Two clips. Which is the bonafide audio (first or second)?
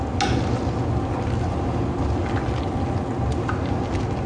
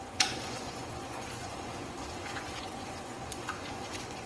first